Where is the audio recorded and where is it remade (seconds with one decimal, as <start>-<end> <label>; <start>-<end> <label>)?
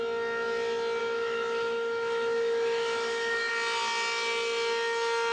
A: 0.0-1.0 recorded; 1.0-3.5 remade; 3.5-5.3 recorded